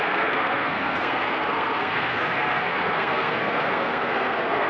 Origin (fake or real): fake